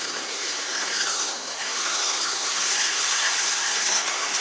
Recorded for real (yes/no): no